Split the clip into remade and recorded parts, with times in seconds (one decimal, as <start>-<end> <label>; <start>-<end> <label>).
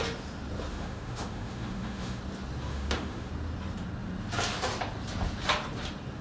0.0-0.7 recorded; 0.7-2.2 remade; 2.2-2.7 recorded; 2.7-3.3 remade; 3.3-6.2 recorded